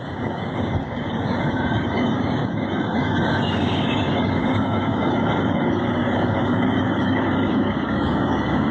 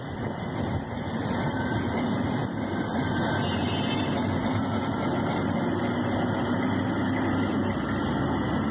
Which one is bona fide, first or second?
second